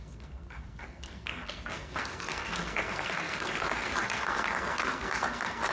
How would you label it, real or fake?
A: fake